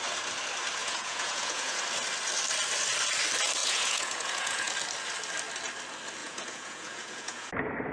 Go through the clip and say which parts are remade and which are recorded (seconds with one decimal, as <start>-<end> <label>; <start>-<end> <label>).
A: 0.0-0.8 recorded; 0.8-1.8 remade; 1.8-3.6 recorded; 3.6-4.7 remade; 4.7-6.2 recorded; 6.2-7.5 remade; 7.5-7.9 recorded